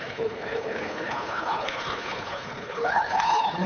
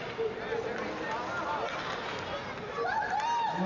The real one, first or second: second